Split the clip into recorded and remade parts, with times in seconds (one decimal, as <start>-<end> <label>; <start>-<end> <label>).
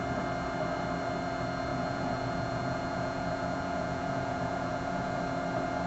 0.0-1.7 recorded; 1.7-5.2 remade; 5.2-5.9 recorded